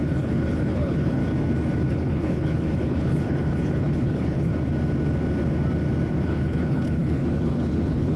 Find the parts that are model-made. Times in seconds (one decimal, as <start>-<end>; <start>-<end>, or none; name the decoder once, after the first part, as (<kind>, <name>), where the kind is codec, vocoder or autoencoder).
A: 0.0-1.2 (codec, HILCodec); 1.9-4.5; 6.1-8.2

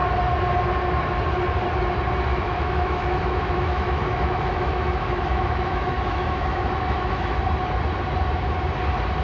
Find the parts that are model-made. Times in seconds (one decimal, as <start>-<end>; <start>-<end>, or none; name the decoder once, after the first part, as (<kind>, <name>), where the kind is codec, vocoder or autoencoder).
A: 2.3-7.4 (autoencoder, DAC-VAE)